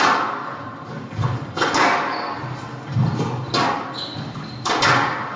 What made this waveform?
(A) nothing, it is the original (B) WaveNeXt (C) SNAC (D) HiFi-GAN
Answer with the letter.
A